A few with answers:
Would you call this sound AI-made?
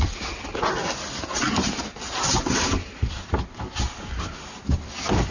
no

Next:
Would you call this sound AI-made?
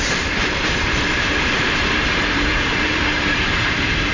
yes